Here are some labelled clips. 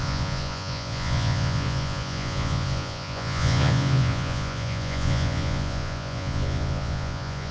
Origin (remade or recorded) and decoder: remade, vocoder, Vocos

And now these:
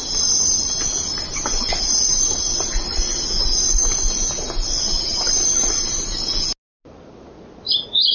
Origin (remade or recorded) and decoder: recorded